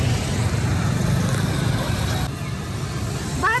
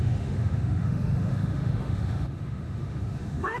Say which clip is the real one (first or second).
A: first